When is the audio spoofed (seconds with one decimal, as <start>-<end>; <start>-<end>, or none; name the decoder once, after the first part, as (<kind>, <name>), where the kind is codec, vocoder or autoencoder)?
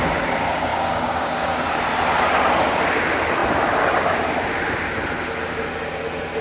0.7-1.8 (codec, DAC)